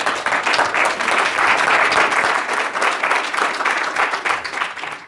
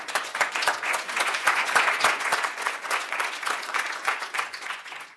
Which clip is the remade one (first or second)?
second